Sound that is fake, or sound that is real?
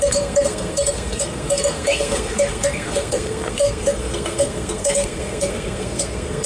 fake